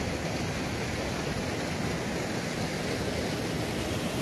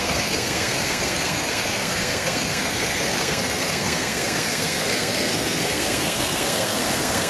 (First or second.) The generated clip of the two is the second